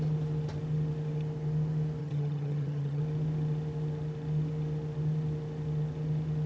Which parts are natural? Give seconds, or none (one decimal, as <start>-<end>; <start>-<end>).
0.0-2.0; 3.0-6.5